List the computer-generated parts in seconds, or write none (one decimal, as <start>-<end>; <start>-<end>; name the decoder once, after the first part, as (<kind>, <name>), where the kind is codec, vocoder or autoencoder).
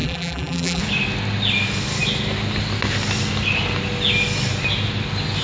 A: 0.0-0.8 (vocoder, BigVGAN v2)